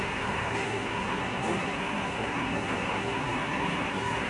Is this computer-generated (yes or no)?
yes